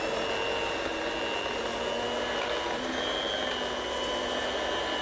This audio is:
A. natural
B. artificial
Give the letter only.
A